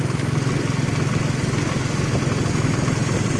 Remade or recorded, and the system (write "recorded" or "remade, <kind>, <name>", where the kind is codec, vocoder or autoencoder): recorded